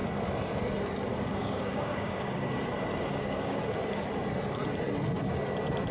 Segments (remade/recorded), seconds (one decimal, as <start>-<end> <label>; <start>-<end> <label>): 0.0-1.3 recorded; 1.3-2.6 remade; 2.6-3.1 recorded; 3.1-3.6 remade; 3.6-5.9 recorded